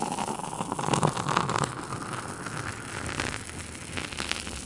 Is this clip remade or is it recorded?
recorded